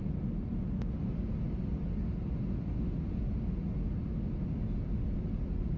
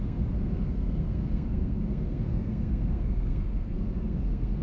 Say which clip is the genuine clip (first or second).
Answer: first